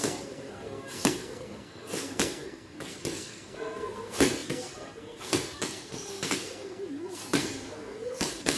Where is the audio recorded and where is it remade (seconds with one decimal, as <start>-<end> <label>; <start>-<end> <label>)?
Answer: 0.0-8.6 remade